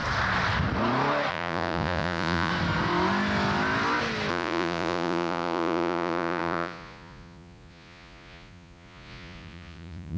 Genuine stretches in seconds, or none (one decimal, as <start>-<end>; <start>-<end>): 0.0-1.3; 2.5-4.3